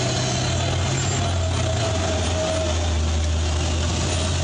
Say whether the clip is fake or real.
real